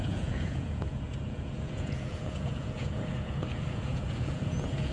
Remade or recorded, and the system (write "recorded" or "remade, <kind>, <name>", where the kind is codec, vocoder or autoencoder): remade, vocoder, Vocos